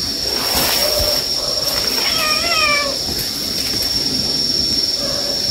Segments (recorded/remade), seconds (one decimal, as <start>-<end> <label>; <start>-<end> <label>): 0.0-5.5 recorded